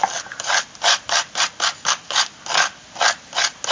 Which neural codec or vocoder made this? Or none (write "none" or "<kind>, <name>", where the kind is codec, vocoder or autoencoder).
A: none